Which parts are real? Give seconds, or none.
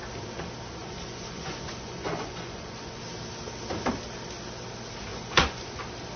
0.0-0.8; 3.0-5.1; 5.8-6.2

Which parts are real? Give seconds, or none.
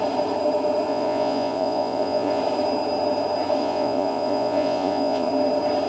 0.0-0.9; 2.4-3.6; 5.3-5.9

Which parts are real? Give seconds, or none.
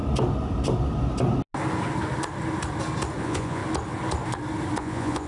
0.0-3.2; 3.6-4.8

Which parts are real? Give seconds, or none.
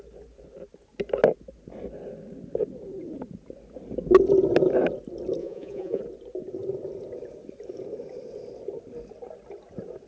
0.0-5.4; 6.0-10.1